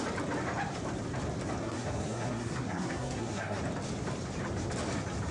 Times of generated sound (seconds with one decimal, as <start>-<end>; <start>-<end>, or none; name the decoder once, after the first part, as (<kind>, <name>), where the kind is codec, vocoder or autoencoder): 1.6-3.6 (codec, SNAC)